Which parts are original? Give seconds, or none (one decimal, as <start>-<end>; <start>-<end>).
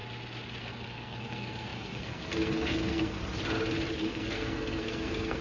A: 0.0-0.6; 3.2-3.9